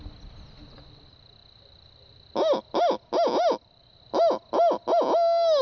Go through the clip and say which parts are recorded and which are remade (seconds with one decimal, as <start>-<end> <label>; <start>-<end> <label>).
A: 0.0-5.6 recorded